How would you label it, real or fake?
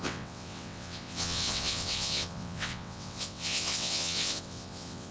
fake